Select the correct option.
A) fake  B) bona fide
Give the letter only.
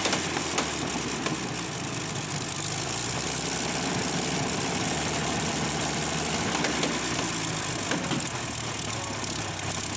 B